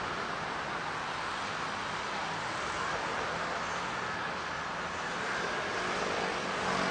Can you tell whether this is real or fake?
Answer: real